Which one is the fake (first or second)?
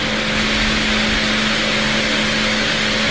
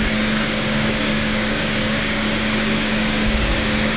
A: second